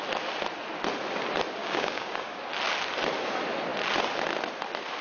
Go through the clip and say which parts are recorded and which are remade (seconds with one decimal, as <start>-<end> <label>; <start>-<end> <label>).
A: 0.0-1.6 recorded; 1.6-2.5 remade; 2.5-5.0 recorded